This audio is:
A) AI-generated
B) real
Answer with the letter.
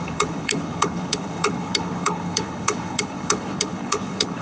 A